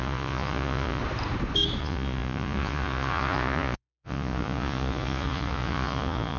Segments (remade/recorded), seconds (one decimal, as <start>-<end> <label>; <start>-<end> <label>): 0.0-1.0 remade; 1.0-1.8 recorded; 1.8-6.4 remade